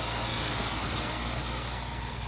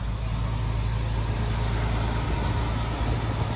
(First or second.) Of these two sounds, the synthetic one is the first